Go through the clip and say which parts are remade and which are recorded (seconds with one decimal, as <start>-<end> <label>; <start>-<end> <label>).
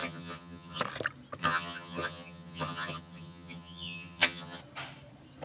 0.0-0.8 remade; 0.8-1.4 recorded; 1.4-4.6 remade; 4.6-5.4 recorded